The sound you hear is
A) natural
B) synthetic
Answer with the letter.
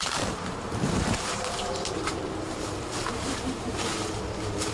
B